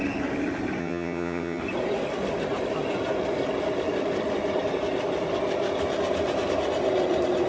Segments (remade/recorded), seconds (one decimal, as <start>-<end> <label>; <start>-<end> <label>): 0.0-0.8 recorded; 0.8-1.6 remade; 1.6-7.5 recorded